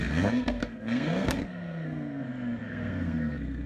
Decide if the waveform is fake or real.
fake